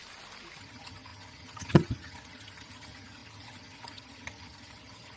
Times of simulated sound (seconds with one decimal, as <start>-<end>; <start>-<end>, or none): 0.6-5.2